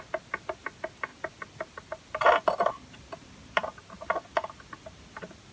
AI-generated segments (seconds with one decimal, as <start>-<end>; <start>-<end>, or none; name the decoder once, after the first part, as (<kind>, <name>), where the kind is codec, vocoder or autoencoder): none